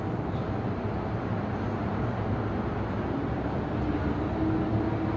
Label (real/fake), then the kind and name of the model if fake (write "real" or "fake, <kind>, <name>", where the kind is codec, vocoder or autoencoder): real